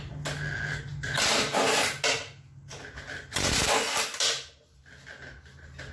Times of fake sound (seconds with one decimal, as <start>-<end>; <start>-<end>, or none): none